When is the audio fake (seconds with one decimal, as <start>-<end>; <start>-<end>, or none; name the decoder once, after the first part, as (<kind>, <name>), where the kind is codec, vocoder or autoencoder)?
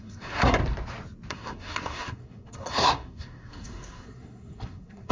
0.0-0.6 (codec, SNAC); 1.3-5.1